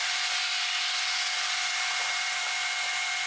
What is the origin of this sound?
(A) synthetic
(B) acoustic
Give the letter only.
A